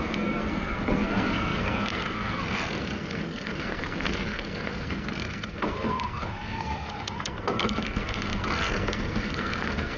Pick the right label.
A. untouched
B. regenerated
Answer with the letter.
B